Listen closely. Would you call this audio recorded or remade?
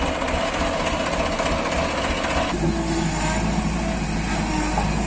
recorded